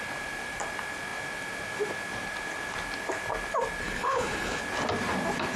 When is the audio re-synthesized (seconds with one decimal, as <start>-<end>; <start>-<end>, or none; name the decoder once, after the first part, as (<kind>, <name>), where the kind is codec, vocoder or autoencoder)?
3.8-4.6 (codec, HILCodec)